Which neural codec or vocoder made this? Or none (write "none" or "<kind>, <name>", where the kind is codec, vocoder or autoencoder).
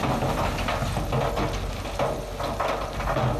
none